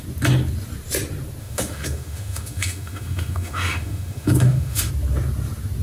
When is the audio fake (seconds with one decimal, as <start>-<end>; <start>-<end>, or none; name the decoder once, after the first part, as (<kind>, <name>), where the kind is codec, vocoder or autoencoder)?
1.4-4.9 (autoencoder, DAC-VAE)